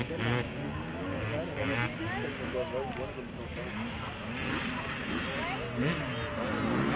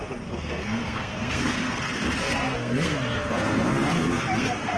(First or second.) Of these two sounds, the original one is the first